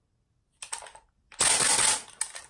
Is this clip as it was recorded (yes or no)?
yes